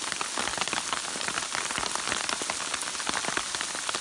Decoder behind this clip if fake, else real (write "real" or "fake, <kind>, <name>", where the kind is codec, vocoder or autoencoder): real